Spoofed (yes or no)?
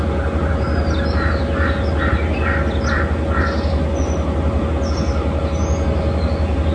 no